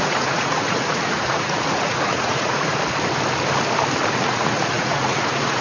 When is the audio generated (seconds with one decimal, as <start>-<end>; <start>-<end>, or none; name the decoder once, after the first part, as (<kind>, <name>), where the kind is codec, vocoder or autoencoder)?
0.0-2.7 (vocoder, Vocos); 4.1-5.6